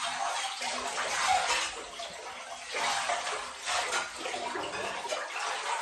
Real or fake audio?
real